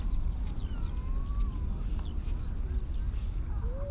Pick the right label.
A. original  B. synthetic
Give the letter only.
A